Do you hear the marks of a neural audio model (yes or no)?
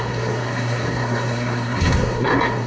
yes